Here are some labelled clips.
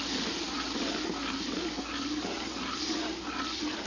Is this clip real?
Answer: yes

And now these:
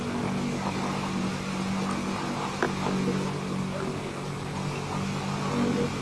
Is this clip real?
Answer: yes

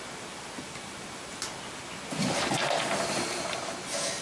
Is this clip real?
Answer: yes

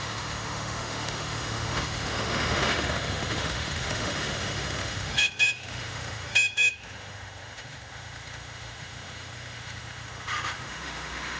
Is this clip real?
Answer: no